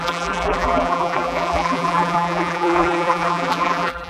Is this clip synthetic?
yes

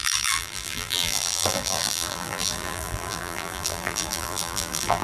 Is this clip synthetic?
yes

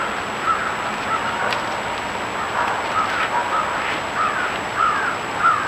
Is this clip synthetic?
no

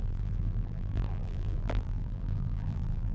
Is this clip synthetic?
yes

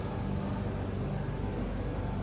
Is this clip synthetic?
no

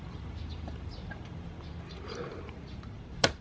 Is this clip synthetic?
yes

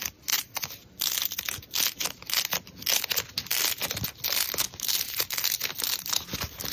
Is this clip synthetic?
no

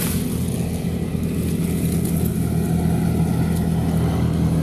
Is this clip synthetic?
no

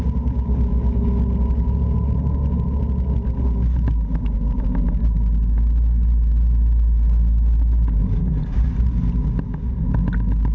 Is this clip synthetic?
no